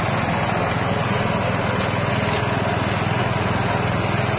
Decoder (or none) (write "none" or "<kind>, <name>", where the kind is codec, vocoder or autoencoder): none